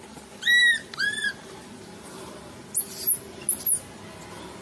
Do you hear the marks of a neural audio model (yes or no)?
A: no